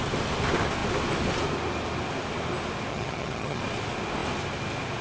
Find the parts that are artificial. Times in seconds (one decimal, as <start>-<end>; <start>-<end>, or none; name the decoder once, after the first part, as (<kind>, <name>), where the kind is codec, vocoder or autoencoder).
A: 2.9-3.6 (vocoder, HiFi-GAN)